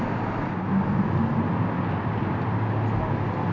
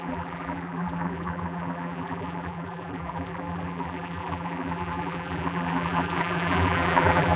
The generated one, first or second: second